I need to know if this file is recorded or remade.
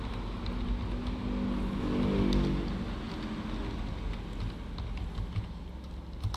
recorded